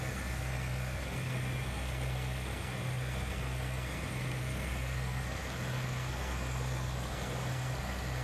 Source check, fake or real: fake